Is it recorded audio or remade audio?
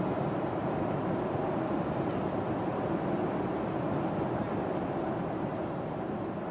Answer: recorded